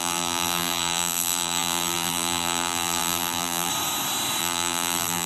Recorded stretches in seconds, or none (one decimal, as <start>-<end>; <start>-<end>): 3.7-4.4